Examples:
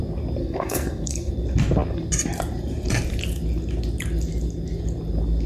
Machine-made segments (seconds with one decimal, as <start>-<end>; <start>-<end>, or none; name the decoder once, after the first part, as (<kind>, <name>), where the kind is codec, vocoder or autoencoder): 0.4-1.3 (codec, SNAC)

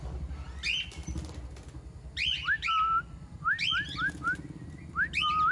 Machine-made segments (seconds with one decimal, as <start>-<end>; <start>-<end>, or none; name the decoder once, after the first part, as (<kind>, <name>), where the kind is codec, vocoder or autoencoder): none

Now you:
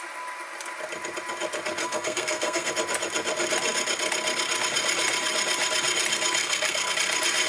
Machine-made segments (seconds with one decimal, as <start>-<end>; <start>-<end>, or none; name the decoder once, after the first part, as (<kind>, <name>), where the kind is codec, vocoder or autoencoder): 1.8-2.7 (codec, SNAC); 6.4-6.9